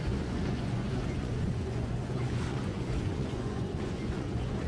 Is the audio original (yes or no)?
no